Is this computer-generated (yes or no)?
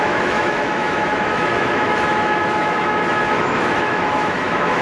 yes